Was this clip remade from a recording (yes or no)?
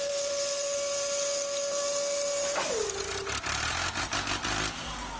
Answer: no